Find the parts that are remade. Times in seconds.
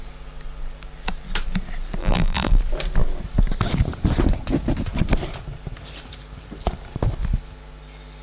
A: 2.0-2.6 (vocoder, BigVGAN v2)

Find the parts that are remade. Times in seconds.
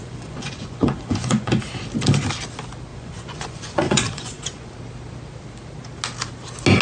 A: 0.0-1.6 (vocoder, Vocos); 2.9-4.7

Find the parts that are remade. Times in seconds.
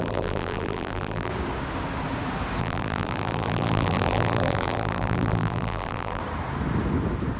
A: 0.0-1.3 (vocoder, BigVGAN v2); 2.6-6.2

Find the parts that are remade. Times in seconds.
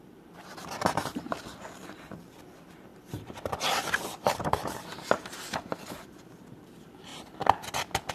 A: 0.0-7.1 (vocoder, BigVGAN v2)